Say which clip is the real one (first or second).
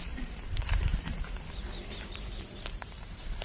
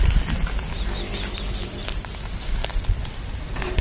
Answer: second